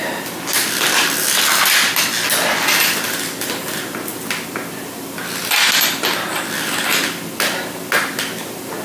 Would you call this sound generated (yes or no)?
no